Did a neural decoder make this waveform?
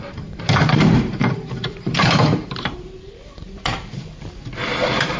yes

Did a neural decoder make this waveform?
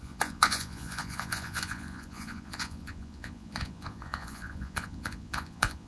yes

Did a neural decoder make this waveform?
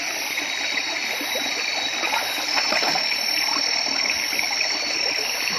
no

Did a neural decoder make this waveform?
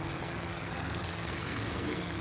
yes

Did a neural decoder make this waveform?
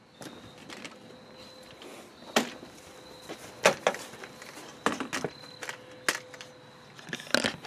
no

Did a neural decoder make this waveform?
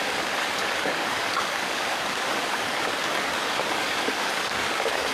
yes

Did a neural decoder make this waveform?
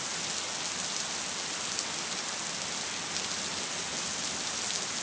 no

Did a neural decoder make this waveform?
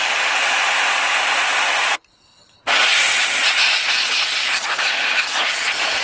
no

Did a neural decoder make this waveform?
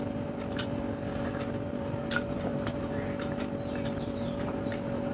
yes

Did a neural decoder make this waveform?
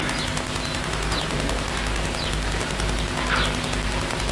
no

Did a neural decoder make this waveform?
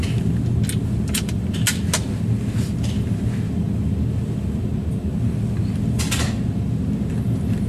no